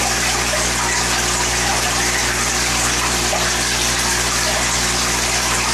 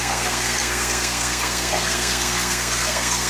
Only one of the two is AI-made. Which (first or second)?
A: second